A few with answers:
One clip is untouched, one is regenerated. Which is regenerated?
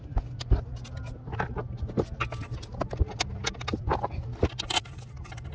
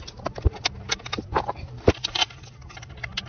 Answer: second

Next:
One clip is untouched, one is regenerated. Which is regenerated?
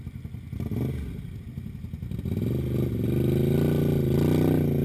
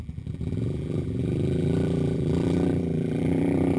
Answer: second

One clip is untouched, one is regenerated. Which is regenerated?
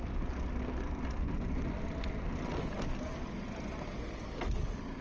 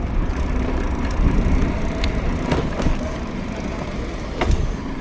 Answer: second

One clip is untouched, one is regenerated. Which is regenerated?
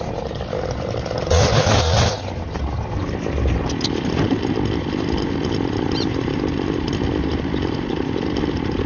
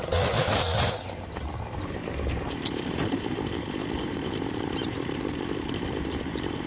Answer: second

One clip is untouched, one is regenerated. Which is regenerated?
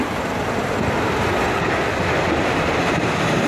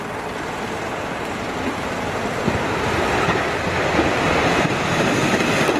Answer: second